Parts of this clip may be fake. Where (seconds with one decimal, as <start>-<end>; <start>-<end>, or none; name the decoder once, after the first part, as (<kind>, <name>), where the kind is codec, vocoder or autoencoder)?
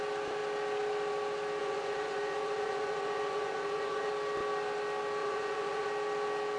1.6-4.1 (vocoder, Vocos); 5.2-5.9